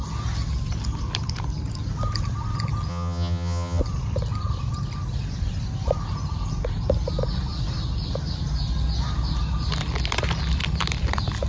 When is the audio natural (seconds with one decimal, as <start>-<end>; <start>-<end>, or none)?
0.0-2.9; 3.8-11.5